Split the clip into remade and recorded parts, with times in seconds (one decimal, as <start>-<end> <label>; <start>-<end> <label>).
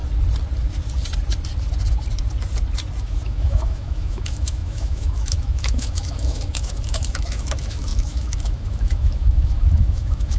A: 0.0-3.0 recorded; 3.0-10.4 remade